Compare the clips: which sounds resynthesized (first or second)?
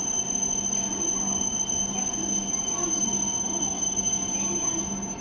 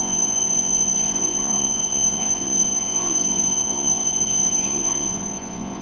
second